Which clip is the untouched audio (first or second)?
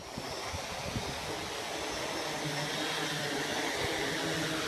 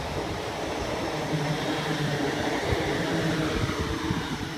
first